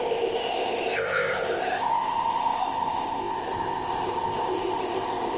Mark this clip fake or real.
fake